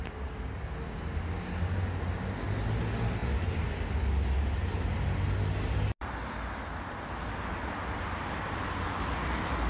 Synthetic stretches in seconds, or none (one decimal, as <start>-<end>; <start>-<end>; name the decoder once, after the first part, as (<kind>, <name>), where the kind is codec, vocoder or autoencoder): none